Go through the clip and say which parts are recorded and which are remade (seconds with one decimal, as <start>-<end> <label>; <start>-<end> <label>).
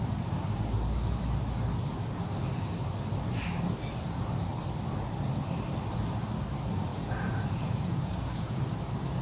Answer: 0.0-6.9 recorded; 6.9-8.6 remade; 8.6-9.2 recorded